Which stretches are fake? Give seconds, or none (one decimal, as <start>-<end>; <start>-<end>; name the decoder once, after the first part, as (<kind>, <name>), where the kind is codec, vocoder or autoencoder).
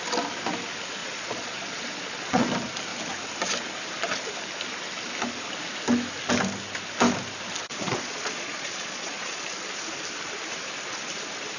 1.0-2.5 (vocoder, Vocos); 7.7-9.4